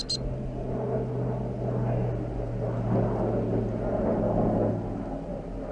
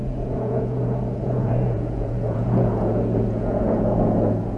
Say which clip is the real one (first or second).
first